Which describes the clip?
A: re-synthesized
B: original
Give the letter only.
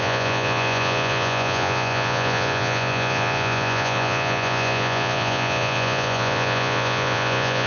A